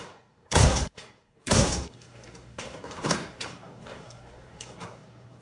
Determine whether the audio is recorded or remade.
remade